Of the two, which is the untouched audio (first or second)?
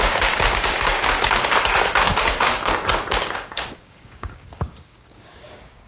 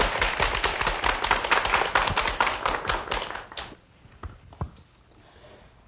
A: second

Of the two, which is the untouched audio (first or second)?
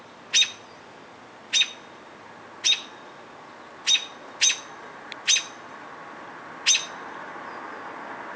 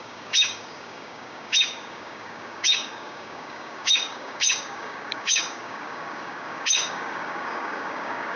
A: first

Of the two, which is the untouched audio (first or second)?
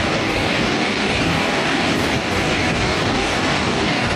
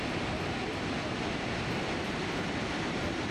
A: second